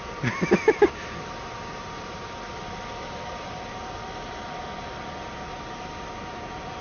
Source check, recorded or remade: recorded